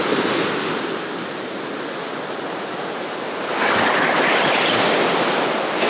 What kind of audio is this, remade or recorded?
recorded